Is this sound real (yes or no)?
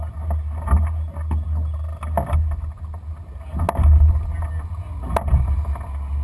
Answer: yes